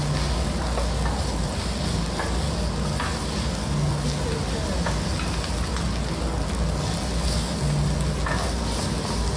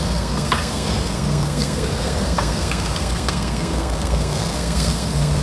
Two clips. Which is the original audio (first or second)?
first